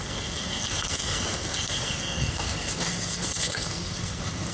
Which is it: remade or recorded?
remade